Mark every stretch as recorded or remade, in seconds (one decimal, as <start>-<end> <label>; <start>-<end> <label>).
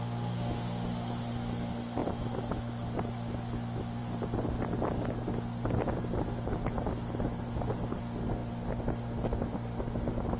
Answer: 0.0-10.4 recorded